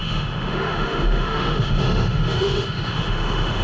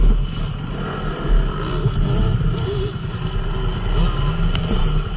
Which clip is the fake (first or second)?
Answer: first